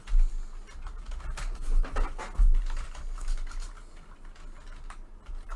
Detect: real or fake real